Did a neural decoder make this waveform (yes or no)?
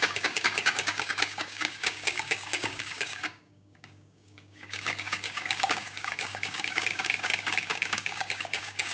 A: yes